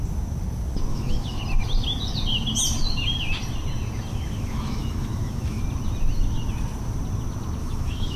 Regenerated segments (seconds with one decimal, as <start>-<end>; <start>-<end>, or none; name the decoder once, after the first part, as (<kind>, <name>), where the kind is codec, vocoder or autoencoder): 0.9-1.4 (autoencoder, DAC-VAE); 4.1-5.6; 7.6-8.2